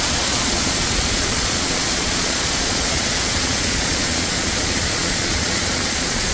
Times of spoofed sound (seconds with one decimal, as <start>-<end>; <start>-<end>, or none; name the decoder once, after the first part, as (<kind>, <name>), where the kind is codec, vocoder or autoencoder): 0.0-6.3 (vocoder, Vocos)

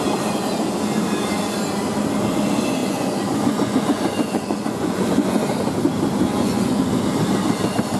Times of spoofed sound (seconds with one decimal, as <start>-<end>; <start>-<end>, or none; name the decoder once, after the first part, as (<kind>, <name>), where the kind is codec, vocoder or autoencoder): 2.8-5.4 (vocoder, Vocos); 6.3-7.0

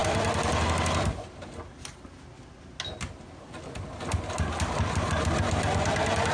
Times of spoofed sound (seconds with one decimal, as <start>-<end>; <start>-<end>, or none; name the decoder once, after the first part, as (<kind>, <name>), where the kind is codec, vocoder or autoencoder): none

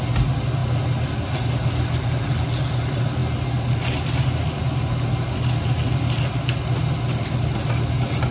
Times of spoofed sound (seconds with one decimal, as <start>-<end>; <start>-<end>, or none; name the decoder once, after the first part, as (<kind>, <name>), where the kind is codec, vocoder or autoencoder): none

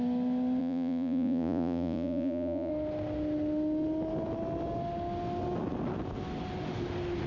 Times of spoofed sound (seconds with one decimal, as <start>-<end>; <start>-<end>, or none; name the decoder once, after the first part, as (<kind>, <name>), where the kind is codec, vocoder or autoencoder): 0.6-2.7 (vocoder, Vocos)

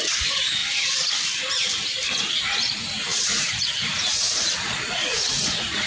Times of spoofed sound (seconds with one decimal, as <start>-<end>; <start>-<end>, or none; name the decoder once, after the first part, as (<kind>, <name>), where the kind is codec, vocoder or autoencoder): 0.0-0.6 (vocoder, Vocos); 2.4-5.9

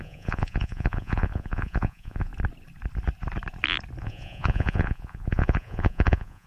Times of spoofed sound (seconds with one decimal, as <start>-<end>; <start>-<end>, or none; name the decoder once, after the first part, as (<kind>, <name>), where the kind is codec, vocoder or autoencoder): 0.0-2.3 (vocoder, Vocos); 4.0-6.5

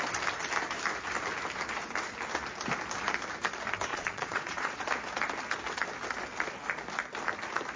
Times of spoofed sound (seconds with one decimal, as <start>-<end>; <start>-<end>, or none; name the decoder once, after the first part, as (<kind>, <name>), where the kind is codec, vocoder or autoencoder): 3.9-4.9 (vocoder, Vocos)